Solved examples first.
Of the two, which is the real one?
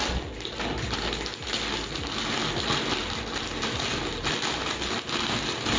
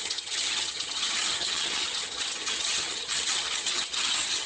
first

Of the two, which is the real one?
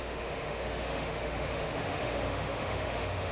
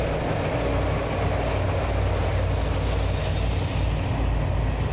second